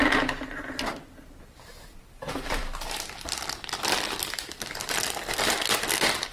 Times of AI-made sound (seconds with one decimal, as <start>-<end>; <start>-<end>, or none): 1.7-5.5